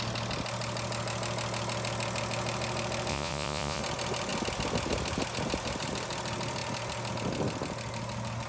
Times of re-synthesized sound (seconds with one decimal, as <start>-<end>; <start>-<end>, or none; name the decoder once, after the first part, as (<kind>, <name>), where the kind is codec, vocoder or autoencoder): 3.1-3.8 (vocoder, Vocos)